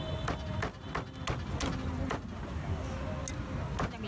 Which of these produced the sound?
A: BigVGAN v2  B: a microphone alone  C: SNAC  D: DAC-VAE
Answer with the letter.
B